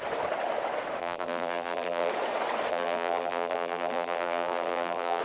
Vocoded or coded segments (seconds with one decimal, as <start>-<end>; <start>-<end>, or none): 1.0-2.1; 2.7-5.2